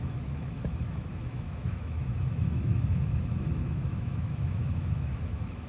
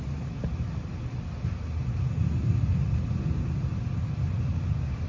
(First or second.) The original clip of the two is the second